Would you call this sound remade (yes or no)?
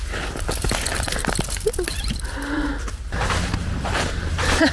no